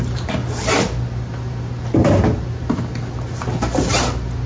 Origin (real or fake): real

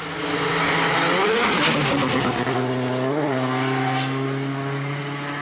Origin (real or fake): real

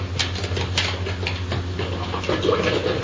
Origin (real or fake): real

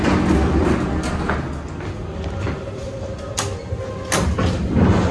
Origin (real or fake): real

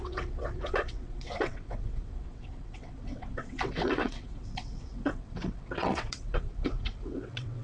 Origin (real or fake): fake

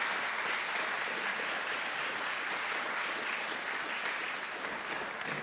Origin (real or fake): real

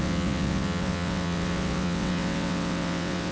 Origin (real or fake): fake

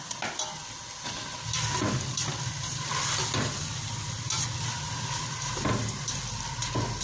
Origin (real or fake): real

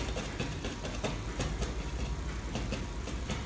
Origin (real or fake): real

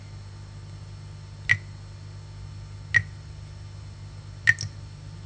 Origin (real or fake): real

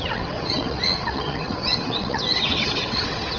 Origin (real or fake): fake